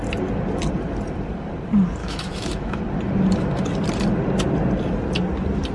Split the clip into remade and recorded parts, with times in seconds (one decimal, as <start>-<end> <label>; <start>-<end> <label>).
0.0-2.0 recorded; 2.0-2.8 remade; 2.8-5.7 recorded